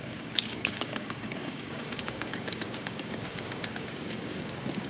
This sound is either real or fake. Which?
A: fake